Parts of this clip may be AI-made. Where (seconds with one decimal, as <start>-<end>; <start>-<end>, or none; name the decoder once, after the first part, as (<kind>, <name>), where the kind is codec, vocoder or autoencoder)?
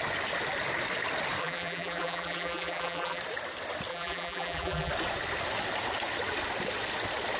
1.4-3.2 (vocoder, BigVGAN v2); 3.9-4.9